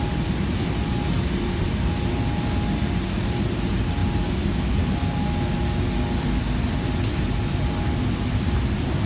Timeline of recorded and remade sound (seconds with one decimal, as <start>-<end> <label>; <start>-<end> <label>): 0.0-9.1 recorded